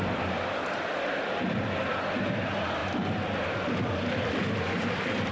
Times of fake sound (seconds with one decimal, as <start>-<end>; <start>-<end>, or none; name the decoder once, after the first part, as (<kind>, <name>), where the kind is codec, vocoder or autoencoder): none